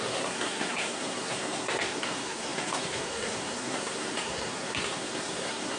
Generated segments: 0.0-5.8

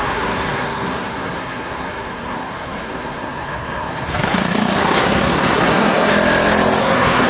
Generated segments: 0.0-6.1; 6.8-7.3